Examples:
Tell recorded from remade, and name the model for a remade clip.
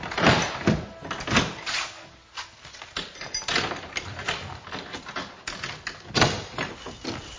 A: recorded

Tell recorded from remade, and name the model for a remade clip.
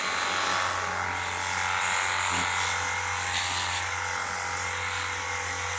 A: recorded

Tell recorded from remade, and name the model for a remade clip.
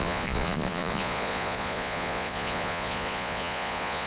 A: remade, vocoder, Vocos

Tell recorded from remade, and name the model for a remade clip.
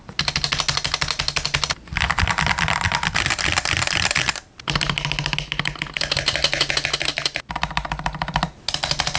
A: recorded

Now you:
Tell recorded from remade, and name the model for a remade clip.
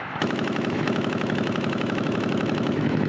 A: remade, autoencoder, DAC-VAE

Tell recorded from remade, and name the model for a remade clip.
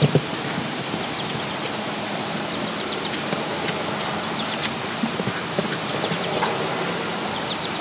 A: remade, vocoder, BigVGAN v2